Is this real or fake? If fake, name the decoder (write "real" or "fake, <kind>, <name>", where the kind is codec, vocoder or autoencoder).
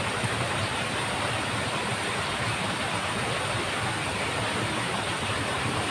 real